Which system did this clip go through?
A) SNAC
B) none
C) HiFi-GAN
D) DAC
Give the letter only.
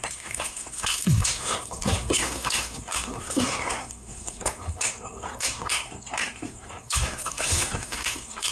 A